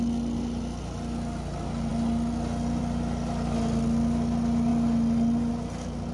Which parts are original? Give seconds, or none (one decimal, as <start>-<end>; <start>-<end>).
0.0-6.1